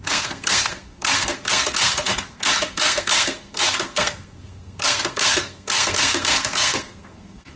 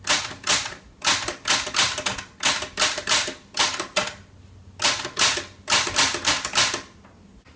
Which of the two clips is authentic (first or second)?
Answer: second